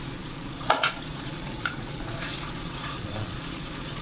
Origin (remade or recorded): remade